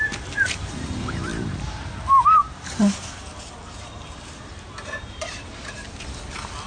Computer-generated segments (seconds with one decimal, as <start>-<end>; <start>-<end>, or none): 1.3-1.9; 2.4-6.0